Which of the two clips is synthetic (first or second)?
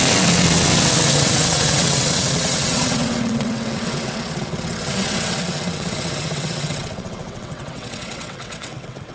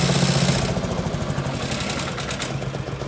first